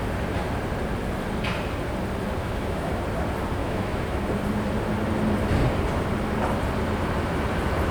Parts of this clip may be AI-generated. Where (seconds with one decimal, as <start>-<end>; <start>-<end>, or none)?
2.4-3.0; 3.6-4.2